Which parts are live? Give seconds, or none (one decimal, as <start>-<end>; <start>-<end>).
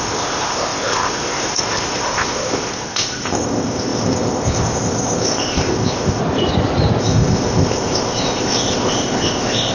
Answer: 6.2-7.0